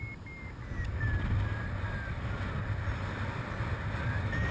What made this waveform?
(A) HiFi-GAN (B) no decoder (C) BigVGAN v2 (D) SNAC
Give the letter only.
B